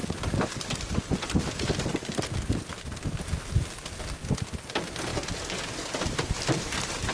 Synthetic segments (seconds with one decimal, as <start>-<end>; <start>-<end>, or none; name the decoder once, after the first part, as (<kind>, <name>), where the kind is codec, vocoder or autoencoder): none